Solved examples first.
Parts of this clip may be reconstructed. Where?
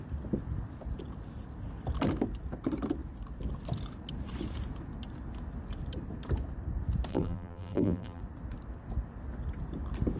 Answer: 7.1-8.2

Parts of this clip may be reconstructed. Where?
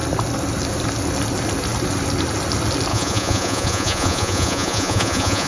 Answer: 2.9-5.5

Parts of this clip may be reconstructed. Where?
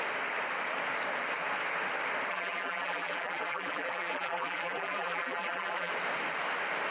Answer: 2.3-5.9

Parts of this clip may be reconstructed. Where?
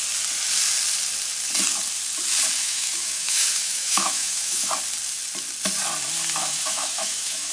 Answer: 2.6-4.7; 6.4-7.5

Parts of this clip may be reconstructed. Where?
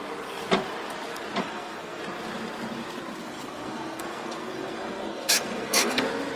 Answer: 1.4-2.0; 3.2-6.0